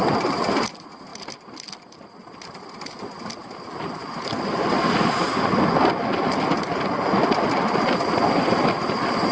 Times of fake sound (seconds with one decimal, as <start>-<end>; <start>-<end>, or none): none